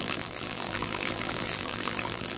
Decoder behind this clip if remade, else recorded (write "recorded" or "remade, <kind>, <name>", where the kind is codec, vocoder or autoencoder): remade, vocoder, BigVGAN v2